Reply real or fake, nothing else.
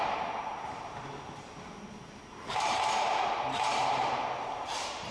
fake